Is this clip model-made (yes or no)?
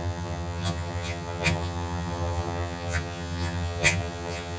yes